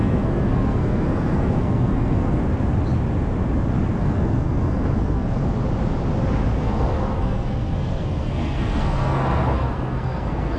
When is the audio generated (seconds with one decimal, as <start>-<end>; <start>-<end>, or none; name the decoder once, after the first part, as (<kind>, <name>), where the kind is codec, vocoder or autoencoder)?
0.0-2.4 (codec, SNAC); 4.0-5.4; 6.6-10.6